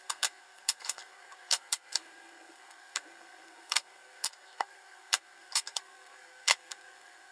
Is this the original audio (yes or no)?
no